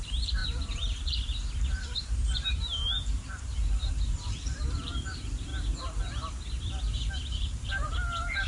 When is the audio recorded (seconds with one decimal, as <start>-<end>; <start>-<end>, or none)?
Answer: 5.5-7.1

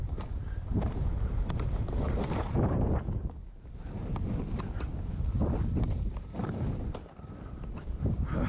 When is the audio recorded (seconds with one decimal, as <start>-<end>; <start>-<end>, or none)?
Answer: 2.8-8.5

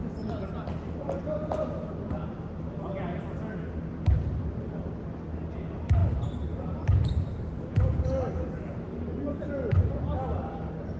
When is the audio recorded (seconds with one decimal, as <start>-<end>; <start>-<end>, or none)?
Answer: 0.0-6.0; 7.5-11.0

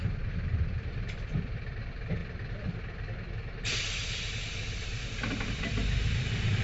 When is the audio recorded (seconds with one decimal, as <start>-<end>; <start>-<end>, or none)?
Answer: 2.2-3.6; 4.0-4.6

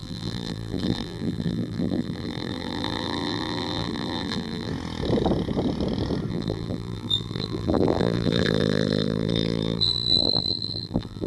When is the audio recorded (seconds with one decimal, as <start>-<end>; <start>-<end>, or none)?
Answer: 4.7-6.3

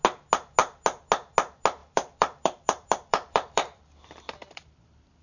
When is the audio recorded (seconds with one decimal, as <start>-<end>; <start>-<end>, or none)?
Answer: 0.0-1.8

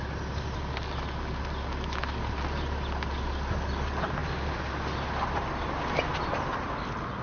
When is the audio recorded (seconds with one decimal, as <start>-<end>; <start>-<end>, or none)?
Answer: 0.0-7.2

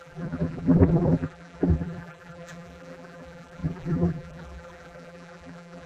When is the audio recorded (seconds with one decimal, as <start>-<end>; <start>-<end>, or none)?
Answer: none